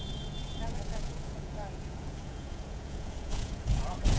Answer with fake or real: fake